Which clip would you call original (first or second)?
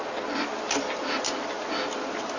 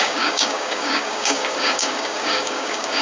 first